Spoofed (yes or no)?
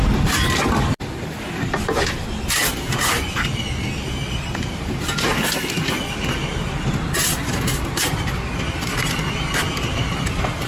no